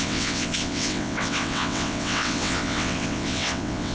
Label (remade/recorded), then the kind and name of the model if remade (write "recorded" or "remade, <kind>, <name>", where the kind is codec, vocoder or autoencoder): remade, vocoder, WaveNeXt